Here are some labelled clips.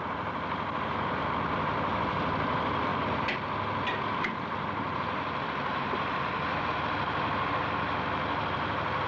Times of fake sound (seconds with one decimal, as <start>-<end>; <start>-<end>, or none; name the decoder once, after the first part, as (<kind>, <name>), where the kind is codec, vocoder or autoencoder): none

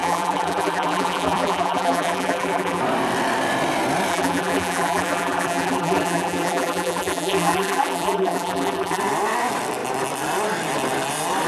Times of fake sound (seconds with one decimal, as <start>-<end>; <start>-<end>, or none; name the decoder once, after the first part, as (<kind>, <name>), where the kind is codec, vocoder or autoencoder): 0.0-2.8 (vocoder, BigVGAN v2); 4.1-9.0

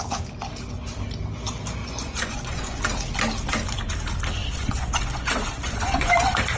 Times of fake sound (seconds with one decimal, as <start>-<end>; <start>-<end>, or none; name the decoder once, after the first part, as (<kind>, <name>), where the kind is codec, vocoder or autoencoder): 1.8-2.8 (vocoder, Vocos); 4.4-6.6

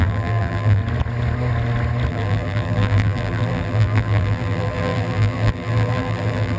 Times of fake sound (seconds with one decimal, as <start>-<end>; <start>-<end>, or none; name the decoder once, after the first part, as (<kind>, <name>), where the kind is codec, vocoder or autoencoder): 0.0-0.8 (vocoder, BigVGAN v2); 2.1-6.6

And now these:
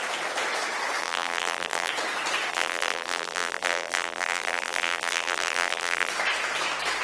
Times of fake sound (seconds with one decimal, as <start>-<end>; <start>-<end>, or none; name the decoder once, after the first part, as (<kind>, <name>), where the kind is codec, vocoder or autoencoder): 1.0-1.9 (vocoder, BigVGAN v2); 2.5-6.1